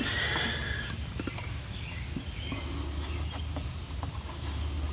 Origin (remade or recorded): recorded